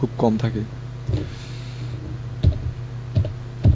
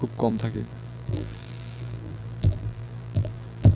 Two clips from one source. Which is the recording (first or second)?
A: first